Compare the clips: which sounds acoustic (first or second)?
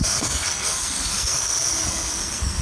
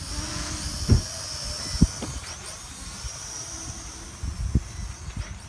second